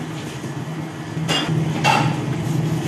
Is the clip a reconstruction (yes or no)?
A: no